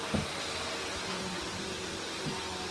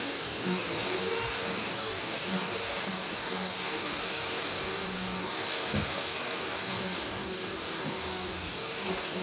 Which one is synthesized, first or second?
second